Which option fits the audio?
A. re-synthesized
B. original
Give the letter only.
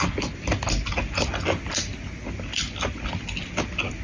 B